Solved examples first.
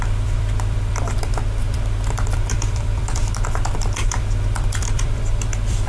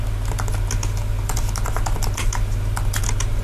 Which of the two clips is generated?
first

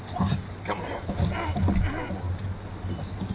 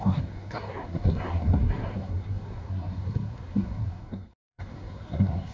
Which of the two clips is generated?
second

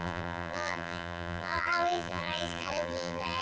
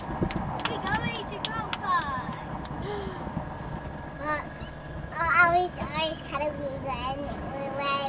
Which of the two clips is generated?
first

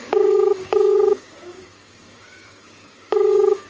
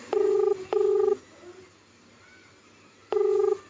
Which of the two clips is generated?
first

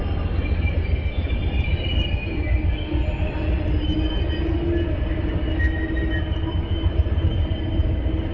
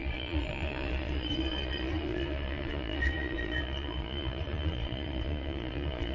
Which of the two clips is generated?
second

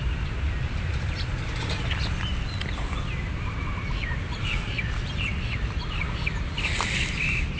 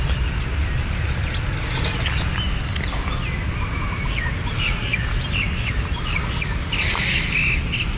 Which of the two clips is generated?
first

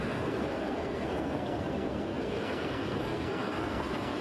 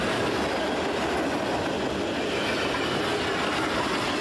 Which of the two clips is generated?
first